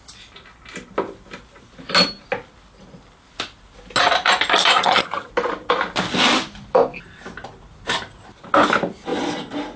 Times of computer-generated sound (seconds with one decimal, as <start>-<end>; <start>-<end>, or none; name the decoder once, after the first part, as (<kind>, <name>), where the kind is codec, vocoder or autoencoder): 4.7-5.3 (vocoder, HiFi-GAN)